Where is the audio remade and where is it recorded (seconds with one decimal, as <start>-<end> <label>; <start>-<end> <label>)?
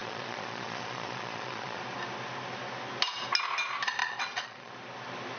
0.0-1.8 remade; 1.8-4.0 recorded; 4.0-4.7 remade; 4.7-5.4 recorded